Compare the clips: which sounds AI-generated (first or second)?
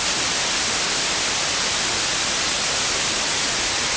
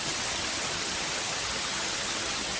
second